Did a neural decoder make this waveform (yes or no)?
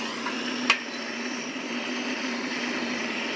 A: no